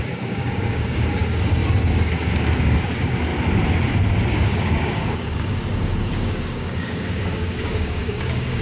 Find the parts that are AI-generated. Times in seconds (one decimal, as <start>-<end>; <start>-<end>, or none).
0.0-3.3; 4.3-8.6